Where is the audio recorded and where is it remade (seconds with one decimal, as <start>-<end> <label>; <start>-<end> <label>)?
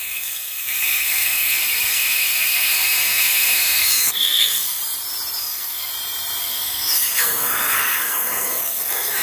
0.0-4.8 remade; 4.8-5.4 recorded; 5.4-5.9 remade; 5.9-6.4 recorded; 6.4-9.2 remade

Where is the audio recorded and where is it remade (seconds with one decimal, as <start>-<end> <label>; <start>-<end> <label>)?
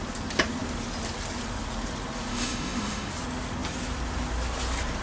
0.0-2.3 recorded; 2.3-3.1 remade; 3.1-5.0 recorded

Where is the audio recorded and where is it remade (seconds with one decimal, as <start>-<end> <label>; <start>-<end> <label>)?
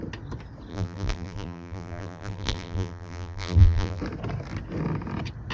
0.0-0.7 recorded; 0.7-4.0 remade; 4.0-5.5 recorded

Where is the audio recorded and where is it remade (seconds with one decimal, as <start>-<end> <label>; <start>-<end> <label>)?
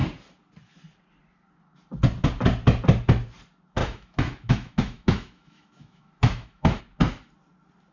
0.0-3.8 recorded; 3.8-6.8 remade; 6.8-7.9 recorded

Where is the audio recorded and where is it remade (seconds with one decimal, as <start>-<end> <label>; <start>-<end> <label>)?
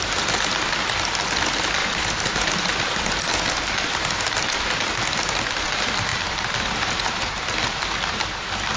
0.0-1.8 recorded; 1.8-3.3 remade; 3.3-6.1 recorded; 6.1-7.4 remade; 7.4-8.8 recorded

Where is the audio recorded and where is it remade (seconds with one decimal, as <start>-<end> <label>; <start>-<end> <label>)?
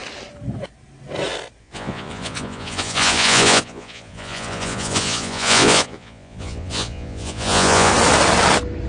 0.0-1.6 recorded; 1.6-7.9 remade; 7.9-8.9 recorded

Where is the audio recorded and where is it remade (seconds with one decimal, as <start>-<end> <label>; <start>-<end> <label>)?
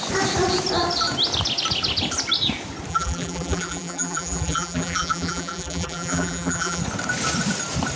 0.0-2.9 recorded; 2.9-6.8 remade; 6.8-8.0 recorded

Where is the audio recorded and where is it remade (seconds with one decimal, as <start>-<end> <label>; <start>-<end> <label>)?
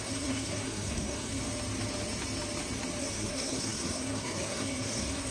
0.0-1.4 remade; 1.4-3.0 recorded; 3.0-5.3 remade